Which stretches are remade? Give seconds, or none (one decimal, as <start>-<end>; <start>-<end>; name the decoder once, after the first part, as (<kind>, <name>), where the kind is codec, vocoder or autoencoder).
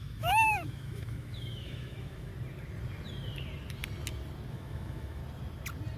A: 0.0-2.3 (autoencoder, DAC-VAE); 4.5-5.2